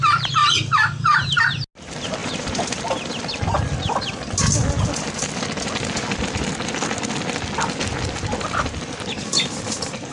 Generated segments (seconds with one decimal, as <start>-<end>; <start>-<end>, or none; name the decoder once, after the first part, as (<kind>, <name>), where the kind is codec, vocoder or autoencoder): 0.4-1.4 (vocoder, BigVGAN v2); 2.2-2.8